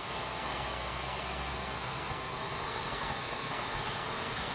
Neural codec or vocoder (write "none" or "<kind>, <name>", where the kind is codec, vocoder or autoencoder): codec, SNAC